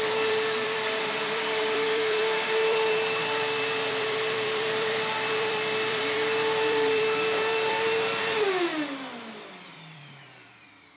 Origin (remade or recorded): remade